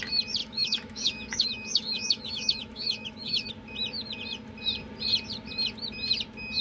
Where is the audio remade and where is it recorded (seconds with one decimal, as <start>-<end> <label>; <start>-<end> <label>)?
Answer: 0.0-0.4 recorded; 0.4-3.5 remade; 3.5-6.6 recorded

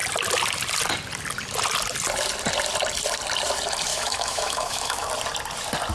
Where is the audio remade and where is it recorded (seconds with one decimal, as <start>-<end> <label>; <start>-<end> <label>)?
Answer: 0.0-3.9 recorded; 3.9-5.1 remade; 5.1-5.9 recorded

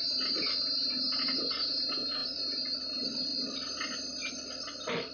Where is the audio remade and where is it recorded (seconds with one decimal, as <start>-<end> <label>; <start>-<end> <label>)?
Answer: 0.0-5.1 recorded

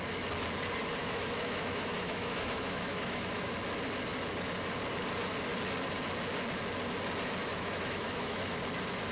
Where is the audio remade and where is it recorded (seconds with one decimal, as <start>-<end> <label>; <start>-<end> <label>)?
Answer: 0.0-1.0 recorded; 1.0-3.5 remade; 3.5-7.5 recorded; 7.5-8.4 remade; 8.4-9.1 recorded